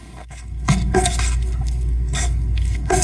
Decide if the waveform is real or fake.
fake